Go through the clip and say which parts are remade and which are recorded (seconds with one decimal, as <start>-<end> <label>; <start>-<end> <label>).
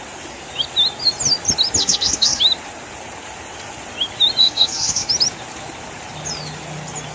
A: 0.0-1.8 recorded; 1.8-2.4 remade; 2.4-4.4 recorded; 4.4-5.1 remade; 5.1-7.1 recorded